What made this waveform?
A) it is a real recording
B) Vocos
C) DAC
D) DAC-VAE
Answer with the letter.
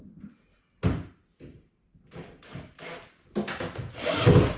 A